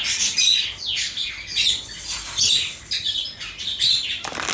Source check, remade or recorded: recorded